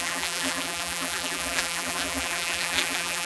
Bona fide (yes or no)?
no